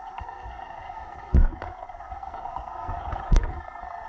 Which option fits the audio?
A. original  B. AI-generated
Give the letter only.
B